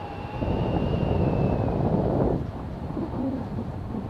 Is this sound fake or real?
real